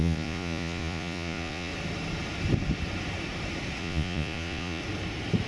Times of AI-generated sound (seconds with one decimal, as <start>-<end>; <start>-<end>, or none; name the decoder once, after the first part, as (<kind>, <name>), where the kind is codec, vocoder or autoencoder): 0.0-1.7 (vocoder, Vocos); 3.8-4.8